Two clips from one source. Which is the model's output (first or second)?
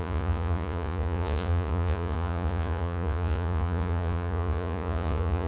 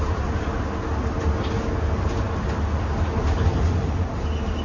first